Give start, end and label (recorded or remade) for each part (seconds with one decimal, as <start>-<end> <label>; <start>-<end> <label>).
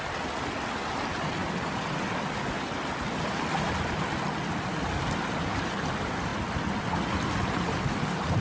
0.0-8.4 recorded